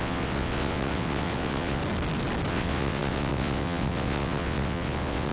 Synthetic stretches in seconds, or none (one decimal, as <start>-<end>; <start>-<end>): 0.0-1.8; 2.5-5.3